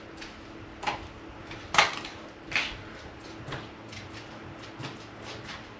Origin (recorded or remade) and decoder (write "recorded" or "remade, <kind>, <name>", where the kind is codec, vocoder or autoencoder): recorded